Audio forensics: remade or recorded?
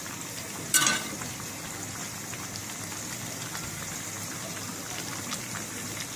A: recorded